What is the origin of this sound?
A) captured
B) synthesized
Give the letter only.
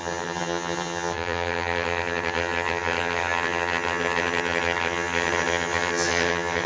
B